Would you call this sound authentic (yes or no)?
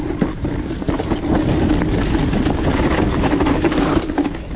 yes